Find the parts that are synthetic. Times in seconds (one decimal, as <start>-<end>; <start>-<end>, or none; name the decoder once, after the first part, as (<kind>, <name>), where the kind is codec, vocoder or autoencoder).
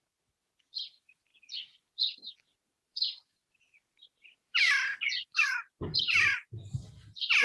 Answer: 0.0-1.3 (vocoder, BigVGAN v2); 1.8-7.4